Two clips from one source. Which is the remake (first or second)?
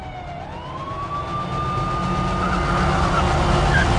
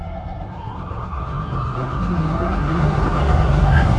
second